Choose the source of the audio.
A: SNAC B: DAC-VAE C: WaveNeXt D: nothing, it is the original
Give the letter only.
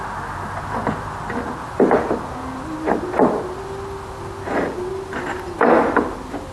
D